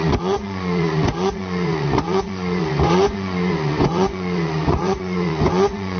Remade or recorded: remade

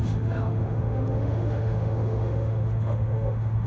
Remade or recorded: remade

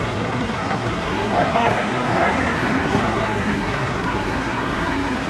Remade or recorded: remade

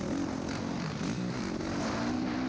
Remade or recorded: recorded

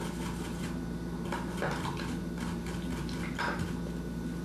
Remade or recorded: recorded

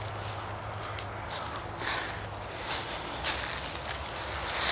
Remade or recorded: recorded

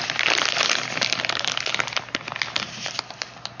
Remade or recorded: recorded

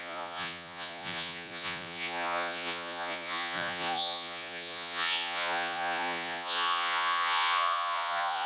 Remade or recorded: remade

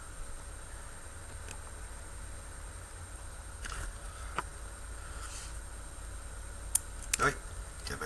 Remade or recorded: recorded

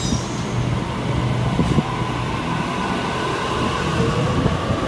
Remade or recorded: recorded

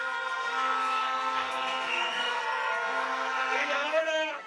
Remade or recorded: remade